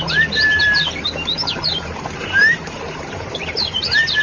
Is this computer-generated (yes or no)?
yes